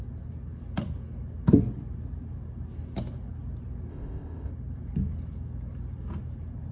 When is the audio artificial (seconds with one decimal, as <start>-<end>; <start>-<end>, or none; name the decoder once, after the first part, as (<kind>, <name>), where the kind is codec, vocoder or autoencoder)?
3.9-4.5 (codec, ZipCodec)